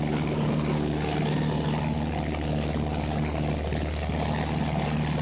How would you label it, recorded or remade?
recorded